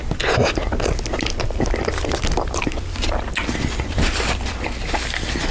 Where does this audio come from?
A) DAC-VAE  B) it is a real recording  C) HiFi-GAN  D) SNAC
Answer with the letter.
B